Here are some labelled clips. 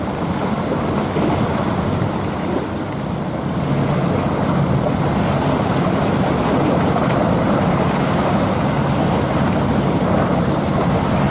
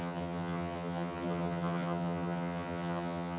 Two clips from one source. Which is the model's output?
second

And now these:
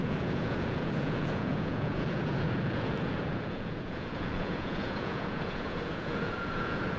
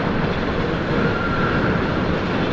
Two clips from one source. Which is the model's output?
first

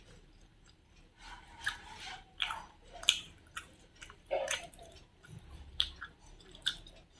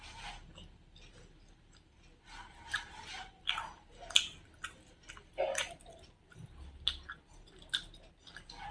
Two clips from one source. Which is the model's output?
first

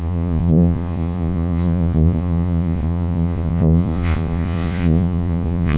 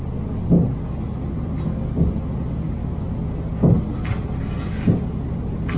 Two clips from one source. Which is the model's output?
first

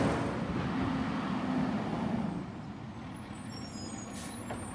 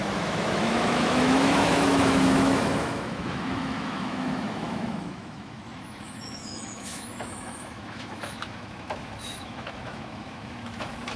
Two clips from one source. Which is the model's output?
second